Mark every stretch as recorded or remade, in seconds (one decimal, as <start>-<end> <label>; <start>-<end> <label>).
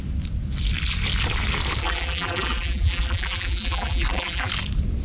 0.0-1.8 recorded; 1.8-4.5 remade; 4.5-5.0 recorded